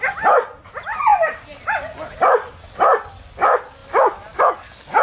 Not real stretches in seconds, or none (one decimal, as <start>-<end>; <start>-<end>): none